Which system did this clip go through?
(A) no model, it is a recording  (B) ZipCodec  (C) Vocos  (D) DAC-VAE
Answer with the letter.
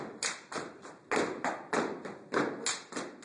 A